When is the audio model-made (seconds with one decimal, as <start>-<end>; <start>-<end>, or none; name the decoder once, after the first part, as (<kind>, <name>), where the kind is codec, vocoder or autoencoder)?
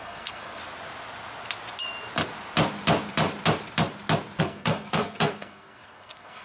0.0-0.6 (codec, SNAC); 4.4-6.4